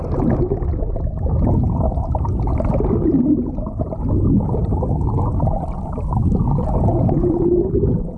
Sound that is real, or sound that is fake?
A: real